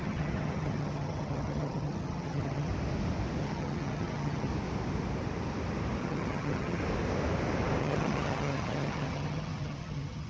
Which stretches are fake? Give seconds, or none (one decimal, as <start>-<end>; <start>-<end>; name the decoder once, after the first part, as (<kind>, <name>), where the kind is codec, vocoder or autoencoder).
0.0-2.7 (vocoder, HiFi-GAN); 3.4-4.5; 6.0-6.8; 7.8-10.3